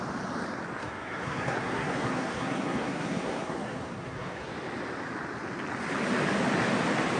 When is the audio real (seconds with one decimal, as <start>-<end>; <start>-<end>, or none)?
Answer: 0.0-0.8; 4.5-7.2